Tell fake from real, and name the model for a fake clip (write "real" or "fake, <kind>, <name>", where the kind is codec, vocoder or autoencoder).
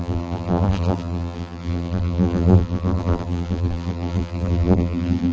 fake, vocoder, BigVGAN v2